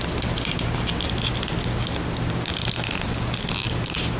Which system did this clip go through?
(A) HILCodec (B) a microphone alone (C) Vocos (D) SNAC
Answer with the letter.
B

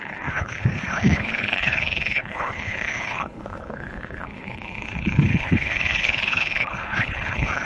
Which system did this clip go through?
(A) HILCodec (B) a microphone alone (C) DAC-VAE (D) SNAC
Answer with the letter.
A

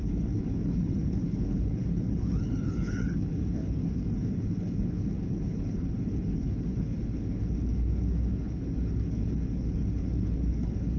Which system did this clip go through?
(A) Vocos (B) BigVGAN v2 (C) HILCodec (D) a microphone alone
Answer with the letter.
C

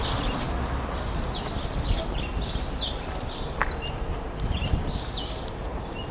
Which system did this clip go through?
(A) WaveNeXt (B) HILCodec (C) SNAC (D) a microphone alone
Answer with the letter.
D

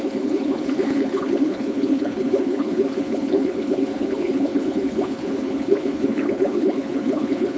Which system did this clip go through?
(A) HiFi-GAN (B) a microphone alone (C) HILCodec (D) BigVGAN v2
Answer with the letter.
C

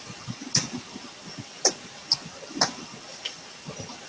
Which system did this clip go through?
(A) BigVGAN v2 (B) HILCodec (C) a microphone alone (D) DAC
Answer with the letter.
C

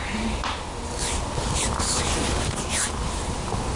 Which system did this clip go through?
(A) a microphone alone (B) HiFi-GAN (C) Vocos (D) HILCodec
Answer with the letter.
A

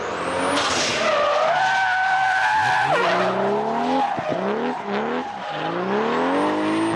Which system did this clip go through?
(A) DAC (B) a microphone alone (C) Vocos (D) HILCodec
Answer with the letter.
B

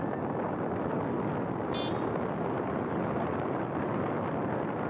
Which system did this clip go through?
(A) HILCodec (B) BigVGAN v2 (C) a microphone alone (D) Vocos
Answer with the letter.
C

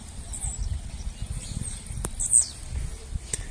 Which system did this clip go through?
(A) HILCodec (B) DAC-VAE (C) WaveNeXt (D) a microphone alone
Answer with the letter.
D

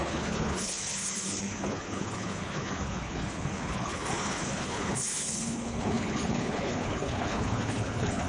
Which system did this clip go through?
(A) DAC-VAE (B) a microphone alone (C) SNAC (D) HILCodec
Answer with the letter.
D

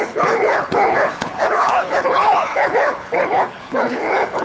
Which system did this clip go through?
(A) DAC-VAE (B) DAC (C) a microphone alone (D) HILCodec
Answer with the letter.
D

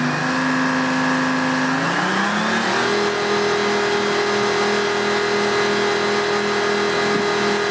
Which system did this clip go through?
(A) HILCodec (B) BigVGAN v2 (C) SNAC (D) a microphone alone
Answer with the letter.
D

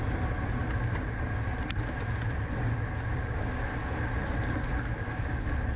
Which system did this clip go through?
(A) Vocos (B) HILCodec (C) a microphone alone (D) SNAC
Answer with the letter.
C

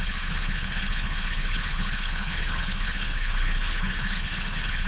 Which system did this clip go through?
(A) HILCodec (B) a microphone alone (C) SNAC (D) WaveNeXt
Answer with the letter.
A